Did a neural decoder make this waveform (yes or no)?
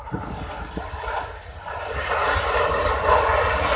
no